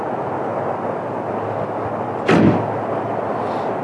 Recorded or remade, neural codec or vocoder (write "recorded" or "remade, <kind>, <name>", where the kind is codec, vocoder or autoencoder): recorded